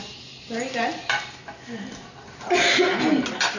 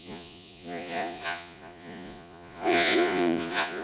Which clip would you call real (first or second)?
first